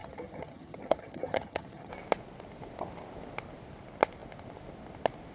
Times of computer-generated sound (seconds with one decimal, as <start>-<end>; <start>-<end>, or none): 0.0-1.9